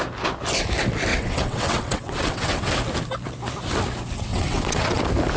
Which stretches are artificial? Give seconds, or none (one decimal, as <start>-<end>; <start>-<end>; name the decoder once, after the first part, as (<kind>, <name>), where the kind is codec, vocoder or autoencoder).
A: 1.1-2.7 (vocoder, WaveNeXt); 4.3-5.0